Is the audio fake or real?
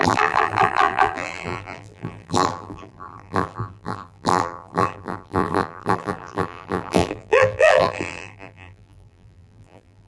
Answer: fake